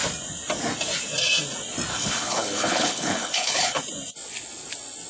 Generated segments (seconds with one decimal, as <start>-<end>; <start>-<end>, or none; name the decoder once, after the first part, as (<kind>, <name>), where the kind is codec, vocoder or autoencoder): 1.9-3.8 (codec, HILCodec)